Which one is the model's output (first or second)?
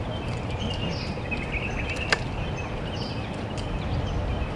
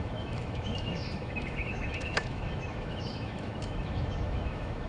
second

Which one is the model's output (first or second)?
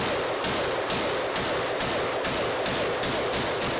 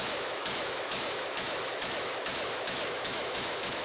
second